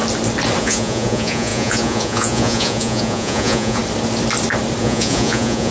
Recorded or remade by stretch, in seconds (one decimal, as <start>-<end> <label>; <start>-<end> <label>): 0.0-0.6 recorded; 0.6-3.8 remade; 3.8-4.8 recorded; 4.8-5.7 remade